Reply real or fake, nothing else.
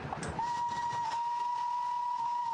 real